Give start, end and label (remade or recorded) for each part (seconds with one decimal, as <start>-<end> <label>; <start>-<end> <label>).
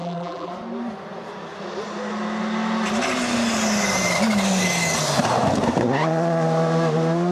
0.0-0.5 remade; 0.5-7.3 recorded